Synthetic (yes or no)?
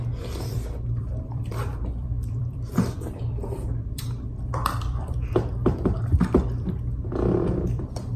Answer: yes